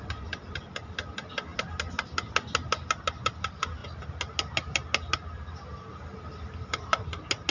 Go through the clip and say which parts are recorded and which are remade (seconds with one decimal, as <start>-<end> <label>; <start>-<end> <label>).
0.0-7.5 recorded